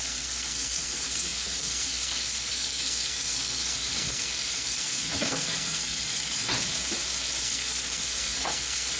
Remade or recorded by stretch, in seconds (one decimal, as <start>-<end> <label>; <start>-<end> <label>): 0.0-6.5 remade; 6.5-7.4 recorded; 7.4-9.0 remade